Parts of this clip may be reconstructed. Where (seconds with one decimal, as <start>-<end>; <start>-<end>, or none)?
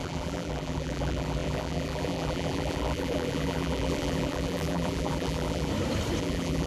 0.0-5.7; 6.2-6.7